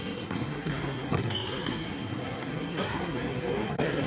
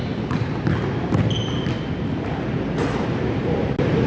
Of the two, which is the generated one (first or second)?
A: first